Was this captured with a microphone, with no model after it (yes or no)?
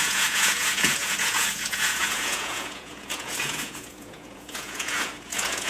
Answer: no